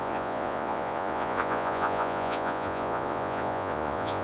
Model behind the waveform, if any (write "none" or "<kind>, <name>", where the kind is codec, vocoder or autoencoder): vocoder, Vocos